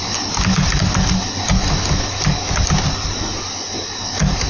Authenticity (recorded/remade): recorded